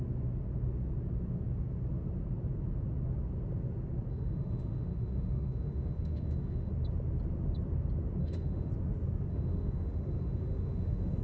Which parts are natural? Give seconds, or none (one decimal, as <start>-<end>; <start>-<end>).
0.0-4.1; 6.7-8.2; 8.7-9.3